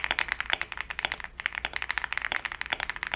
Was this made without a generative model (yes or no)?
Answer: yes